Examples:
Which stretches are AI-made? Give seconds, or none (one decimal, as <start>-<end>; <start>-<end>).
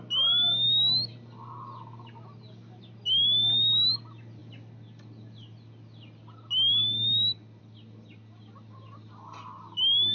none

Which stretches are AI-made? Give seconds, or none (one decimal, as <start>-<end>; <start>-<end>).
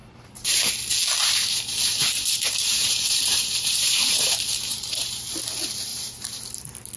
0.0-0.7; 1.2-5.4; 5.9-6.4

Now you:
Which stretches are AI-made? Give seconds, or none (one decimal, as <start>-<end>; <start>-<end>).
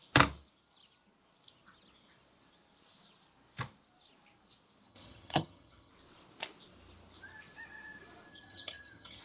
4.9-5.9; 8.3-9.2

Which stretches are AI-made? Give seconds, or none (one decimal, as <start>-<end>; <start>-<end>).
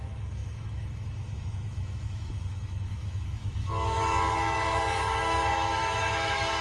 0.0-6.6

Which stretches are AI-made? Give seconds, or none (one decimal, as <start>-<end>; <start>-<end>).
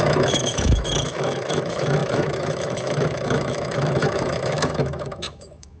0.0-5.8